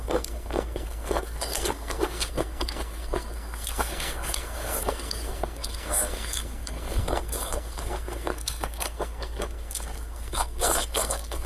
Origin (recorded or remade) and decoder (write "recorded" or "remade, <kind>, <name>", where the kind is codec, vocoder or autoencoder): remade, codec, SNAC